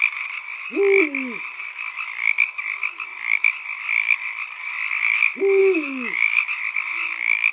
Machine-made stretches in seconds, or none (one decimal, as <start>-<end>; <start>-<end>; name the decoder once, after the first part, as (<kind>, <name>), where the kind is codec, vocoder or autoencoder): 5.6-6.5 (autoencoder, DAC-VAE)